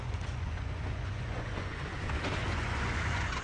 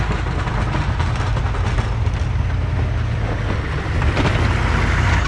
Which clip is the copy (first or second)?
first